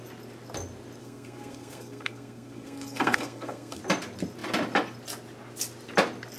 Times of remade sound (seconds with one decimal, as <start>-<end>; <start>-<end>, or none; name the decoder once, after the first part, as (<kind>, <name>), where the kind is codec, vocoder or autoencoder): 1.0-3.8 (codec, SNAC)